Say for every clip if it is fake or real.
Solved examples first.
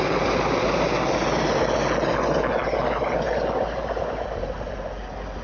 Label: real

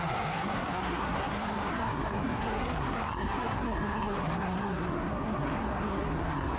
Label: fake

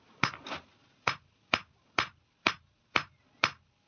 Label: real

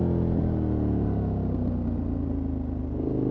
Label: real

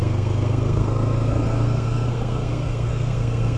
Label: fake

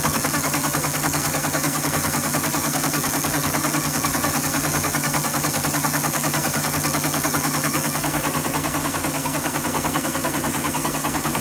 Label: fake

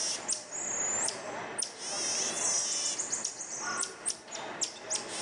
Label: real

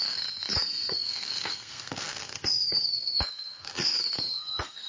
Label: fake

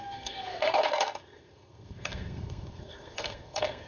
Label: fake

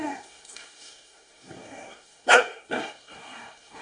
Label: fake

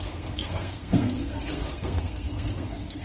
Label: fake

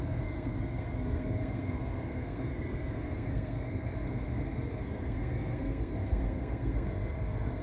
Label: fake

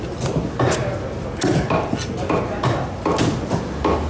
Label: real